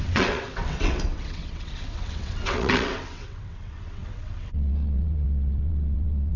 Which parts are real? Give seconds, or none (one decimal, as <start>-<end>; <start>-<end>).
none